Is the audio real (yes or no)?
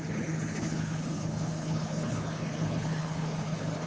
no